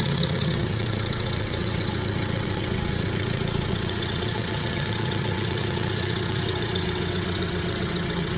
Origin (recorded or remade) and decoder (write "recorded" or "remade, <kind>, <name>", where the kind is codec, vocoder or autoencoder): remade, vocoder, WaveNeXt